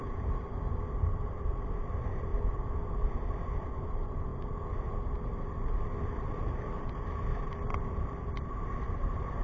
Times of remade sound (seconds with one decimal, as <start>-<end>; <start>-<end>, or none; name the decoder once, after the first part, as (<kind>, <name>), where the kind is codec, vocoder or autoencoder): 0.0-2.3 (vocoder, BigVGAN v2); 3.9-4.3; 5.2-9.4